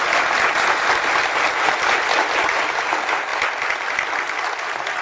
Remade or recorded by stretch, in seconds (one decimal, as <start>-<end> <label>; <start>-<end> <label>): 0.0-5.0 recorded